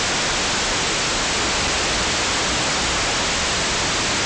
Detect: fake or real real